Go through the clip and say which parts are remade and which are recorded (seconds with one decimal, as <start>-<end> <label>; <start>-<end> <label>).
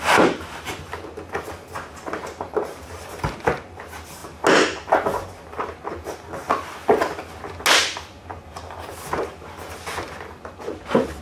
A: 0.0-2.2 recorded; 2.2-3.8 remade; 3.8-11.2 recorded